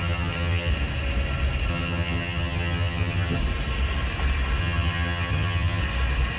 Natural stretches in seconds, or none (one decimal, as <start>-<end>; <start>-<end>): 0.7-1.7; 3.4-4.6; 5.8-6.4